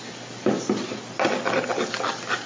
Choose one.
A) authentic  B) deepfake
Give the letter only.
A